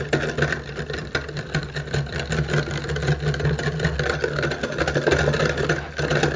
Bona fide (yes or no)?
yes